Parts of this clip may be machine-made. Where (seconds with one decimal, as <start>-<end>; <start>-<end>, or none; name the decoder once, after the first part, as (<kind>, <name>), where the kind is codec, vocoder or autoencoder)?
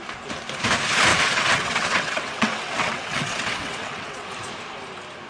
1.1-4.3 (vocoder, WaveNeXt)